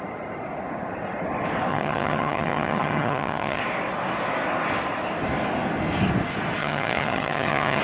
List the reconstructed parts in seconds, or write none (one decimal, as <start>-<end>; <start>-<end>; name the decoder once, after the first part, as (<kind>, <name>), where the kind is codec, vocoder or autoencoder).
1.7-3.6 (vocoder, HiFi-GAN); 6.6-7.8